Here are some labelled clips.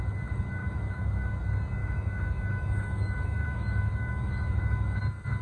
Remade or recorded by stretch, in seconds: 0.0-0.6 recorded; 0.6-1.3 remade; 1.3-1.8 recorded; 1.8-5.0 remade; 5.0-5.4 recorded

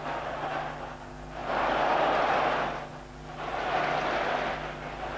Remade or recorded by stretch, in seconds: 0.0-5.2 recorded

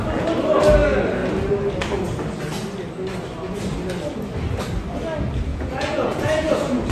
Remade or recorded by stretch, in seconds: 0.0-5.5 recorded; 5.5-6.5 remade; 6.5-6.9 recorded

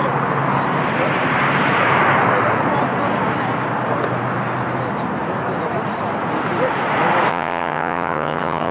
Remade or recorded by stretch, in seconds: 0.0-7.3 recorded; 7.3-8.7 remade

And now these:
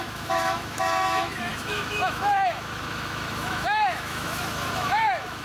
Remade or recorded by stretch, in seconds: 0.0-5.4 remade

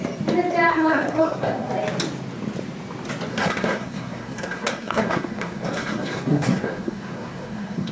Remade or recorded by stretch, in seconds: 0.0-0.7 recorded; 0.7-1.7 remade; 1.7-3.3 recorded; 3.3-7.9 remade